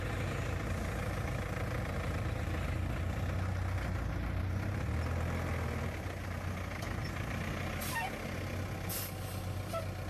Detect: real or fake real